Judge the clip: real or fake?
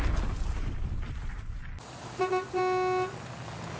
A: real